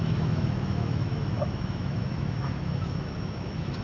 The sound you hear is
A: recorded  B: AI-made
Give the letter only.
B